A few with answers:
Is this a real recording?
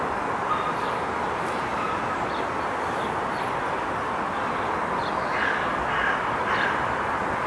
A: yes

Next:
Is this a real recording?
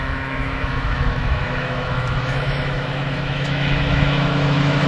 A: no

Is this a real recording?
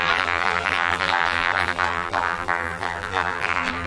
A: no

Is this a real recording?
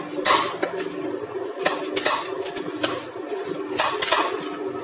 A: yes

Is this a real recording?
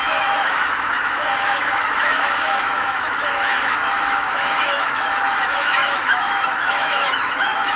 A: no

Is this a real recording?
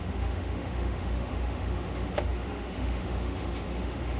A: no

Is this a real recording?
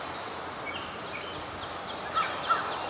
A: yes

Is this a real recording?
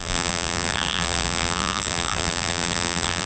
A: no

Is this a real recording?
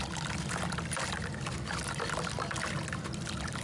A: yes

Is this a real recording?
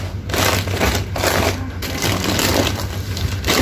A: yes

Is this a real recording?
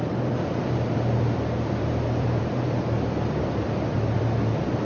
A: no